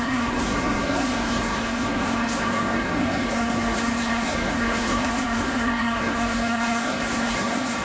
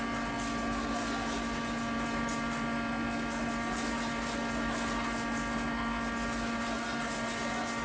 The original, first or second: second